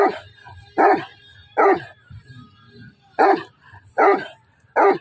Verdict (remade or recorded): recorded